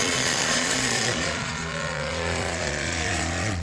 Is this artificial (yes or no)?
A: yes